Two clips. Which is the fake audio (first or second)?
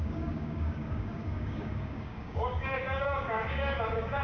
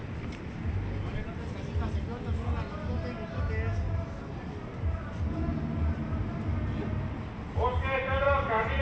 first